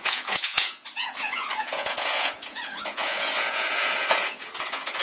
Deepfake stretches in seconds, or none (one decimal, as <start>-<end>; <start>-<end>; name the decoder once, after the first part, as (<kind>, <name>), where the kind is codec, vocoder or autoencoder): 0.0-5.0 (vocoder, Vocos)